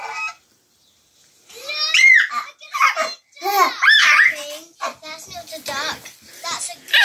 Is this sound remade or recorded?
recorded